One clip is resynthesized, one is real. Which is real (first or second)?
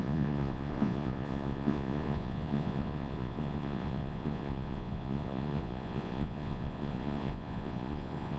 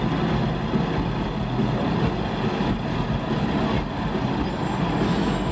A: second